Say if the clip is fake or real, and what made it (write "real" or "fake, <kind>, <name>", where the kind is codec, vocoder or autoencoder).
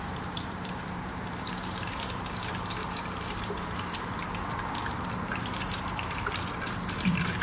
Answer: fake, vocoder, BigVGAN v2